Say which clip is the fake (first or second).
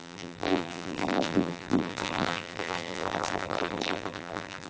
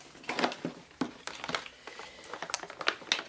first